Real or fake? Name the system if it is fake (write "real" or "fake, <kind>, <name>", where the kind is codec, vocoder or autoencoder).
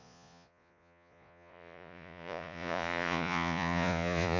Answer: fake, vocoder, Vocos